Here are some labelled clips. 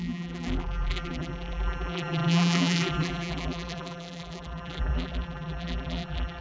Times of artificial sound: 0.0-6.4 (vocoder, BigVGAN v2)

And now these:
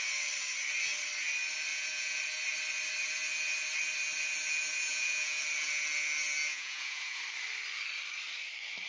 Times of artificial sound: 1.7-2.2 (vocoder, Vocos); 4.9-5.4; 6.5-7.2